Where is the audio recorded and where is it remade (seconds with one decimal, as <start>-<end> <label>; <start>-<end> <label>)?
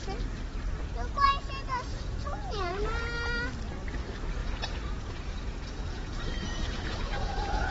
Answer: 0.0-1.9 recorded; 1.9-2.7 remade; 2.7-4.4 recorded; 4.4-7.7 remade